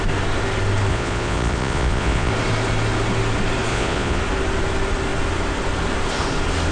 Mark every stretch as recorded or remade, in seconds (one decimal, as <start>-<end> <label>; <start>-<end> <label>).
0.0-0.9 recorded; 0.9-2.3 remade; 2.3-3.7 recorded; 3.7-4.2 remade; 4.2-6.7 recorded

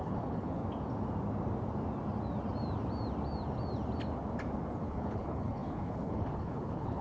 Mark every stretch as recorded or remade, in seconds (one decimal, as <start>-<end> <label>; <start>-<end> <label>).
0.0-0.6 remade; 0.6-4.8 recorded; 4.8-7.0 remade

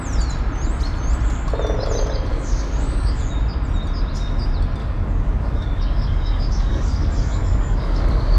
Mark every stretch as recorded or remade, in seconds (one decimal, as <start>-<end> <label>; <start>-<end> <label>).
0.0-2.3 recorded; 2.3-3.2 remade; 3.2-4.8 recorded; 4.8-8.4 remade